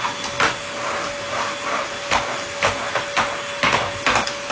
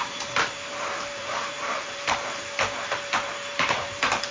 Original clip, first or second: first